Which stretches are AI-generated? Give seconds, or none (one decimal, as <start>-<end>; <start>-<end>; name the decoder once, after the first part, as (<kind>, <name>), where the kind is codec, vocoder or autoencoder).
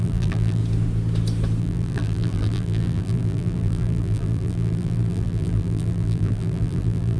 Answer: 0.0-0.6 (vocoder, BigVGAN v2); 1.6-7.2